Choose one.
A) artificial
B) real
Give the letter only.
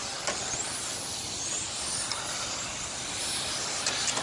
A